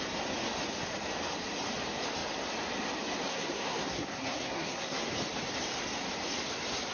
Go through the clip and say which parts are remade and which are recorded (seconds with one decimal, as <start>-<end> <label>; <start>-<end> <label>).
0.0-3.3 recorded; 3.3-5.0 remade; 5.0-6.9 recorded